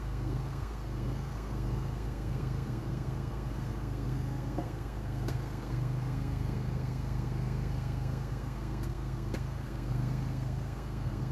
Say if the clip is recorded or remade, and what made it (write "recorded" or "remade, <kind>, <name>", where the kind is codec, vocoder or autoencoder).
remade, codec, SNAC